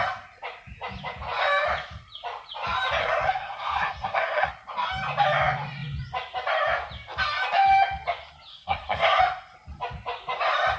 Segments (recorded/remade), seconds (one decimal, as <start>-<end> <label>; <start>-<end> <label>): 0.0-3.0 recorded; 3.0-4.5 remade; 4.5-8.5 recorded; 8.5-9.2 remade; 9.2-10.8 recorded